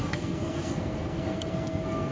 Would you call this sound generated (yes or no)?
yes